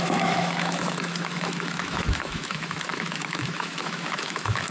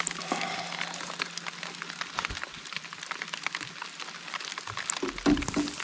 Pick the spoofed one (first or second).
first